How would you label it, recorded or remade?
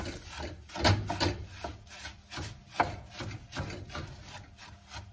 recorded